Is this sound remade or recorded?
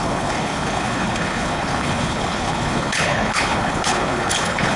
remade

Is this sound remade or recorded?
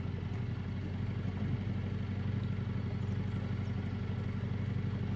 recorded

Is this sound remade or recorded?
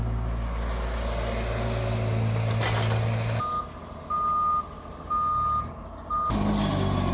recorded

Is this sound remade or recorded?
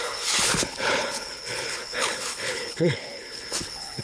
remade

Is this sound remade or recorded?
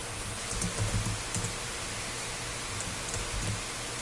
recorded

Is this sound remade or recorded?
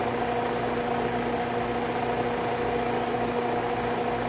recorded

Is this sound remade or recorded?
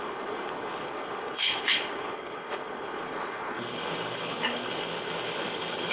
remade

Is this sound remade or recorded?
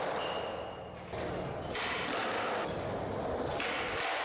recorded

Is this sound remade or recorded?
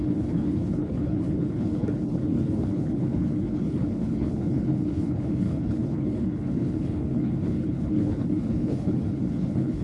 remade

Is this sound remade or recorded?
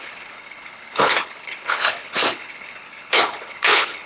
remade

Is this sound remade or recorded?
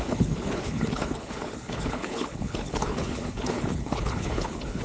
remade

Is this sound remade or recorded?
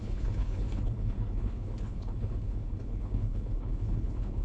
remade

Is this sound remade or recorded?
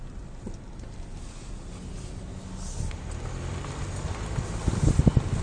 recorded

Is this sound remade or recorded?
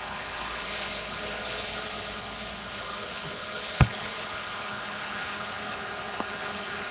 remade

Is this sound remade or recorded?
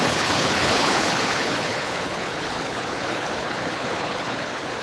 remade